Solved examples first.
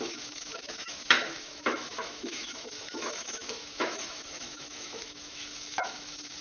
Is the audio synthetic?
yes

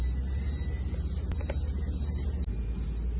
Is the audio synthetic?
no